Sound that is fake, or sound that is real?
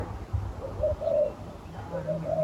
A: real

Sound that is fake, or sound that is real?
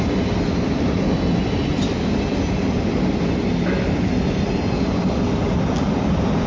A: real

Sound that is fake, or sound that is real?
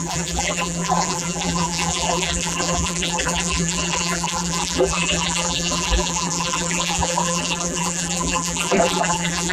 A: fake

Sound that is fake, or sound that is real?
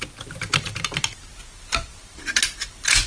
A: real